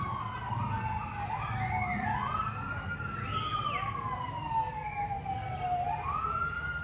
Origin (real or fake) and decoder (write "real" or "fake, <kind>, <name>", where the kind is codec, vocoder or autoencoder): real